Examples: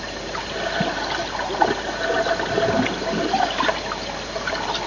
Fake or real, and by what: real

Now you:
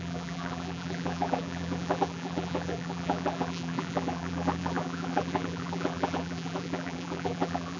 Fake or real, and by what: fake, vocoder, BigVGAN v2